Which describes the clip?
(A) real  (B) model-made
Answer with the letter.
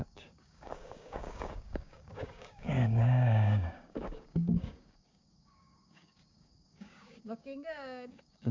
B